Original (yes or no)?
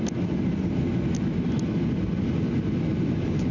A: yes